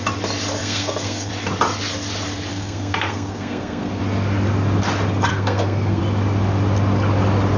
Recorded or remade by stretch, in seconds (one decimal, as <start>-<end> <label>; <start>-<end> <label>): 0.0-0.6 recorded; 0.6-1.3 remade; 1.3-2.5 recorded; 2.5-4.0 remade; 4.0-5.3 recorded; 5.3-6.0 remade; 6.0-7.6 recorded